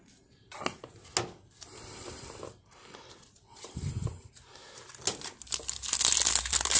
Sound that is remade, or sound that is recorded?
recorded